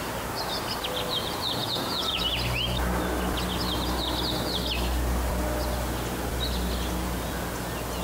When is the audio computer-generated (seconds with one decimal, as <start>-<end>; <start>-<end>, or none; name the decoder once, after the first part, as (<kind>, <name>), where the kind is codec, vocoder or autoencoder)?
1.6-2.2 (vocoder, Vocos)